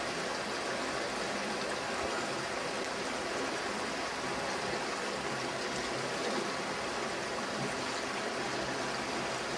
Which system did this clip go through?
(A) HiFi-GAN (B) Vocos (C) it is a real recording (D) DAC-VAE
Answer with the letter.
C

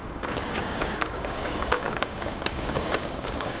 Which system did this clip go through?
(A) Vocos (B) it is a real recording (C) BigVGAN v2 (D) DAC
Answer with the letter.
D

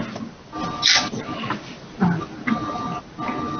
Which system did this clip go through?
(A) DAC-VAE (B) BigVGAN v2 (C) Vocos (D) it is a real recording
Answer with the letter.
D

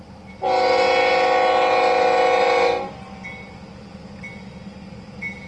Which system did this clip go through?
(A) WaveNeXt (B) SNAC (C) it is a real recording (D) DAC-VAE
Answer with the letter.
C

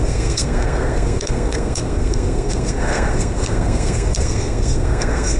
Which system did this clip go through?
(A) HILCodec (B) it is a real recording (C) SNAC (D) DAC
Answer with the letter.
C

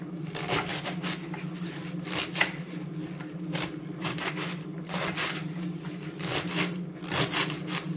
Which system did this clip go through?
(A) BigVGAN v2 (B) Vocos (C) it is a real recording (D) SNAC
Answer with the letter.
C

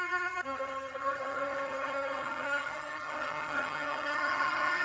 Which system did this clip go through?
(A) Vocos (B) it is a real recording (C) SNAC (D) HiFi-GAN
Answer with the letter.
D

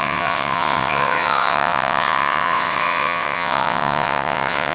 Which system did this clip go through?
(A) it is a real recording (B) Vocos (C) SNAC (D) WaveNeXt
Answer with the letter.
D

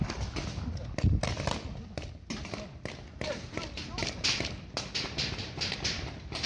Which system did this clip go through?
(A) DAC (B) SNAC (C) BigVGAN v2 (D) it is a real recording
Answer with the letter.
D